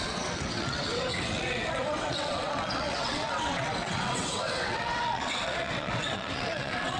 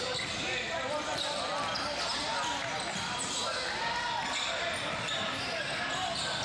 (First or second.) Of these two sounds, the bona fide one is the second